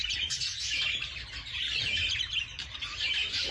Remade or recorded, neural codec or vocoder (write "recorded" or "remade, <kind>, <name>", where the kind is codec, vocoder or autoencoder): remade, vocoder, BigVGAN v2